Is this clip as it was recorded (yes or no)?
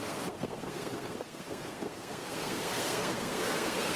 no